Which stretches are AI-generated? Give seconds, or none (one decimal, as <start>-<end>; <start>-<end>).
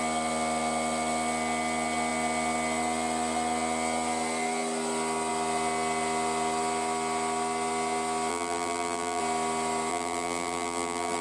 8.3-9.2; 9.9-11.2